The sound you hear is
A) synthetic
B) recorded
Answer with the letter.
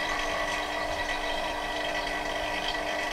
A